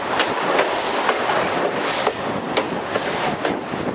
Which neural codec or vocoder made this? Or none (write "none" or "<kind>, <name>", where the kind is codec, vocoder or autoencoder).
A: none